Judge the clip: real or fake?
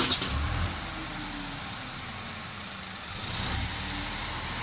real